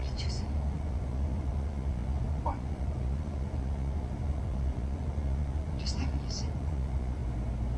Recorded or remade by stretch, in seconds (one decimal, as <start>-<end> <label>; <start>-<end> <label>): 0.0-7.2 remade; 7.2-7.8 recorded